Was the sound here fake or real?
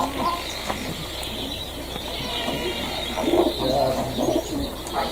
real